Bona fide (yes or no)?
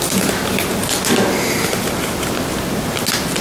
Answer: yes